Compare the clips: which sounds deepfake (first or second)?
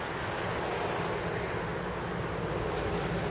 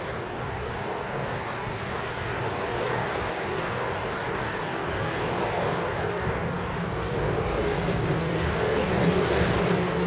second